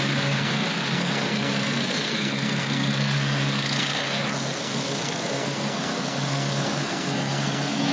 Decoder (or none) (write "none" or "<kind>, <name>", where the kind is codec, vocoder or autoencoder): codec, SNAC